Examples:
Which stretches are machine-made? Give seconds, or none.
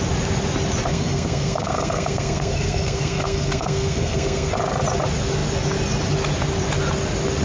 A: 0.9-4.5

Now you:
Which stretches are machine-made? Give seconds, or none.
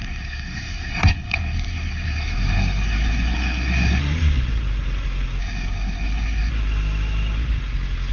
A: 0.0-4.0; 5.4-6.5